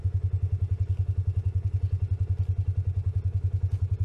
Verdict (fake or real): real